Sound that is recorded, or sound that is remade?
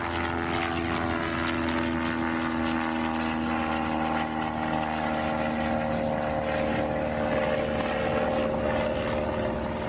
recorded